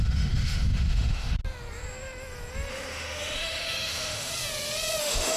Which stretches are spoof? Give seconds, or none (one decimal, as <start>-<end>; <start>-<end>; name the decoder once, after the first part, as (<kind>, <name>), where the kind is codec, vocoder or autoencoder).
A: 0.0-1.4 (autoencoder, DAC-VAE); 2.7-4.3; 5.0-5.4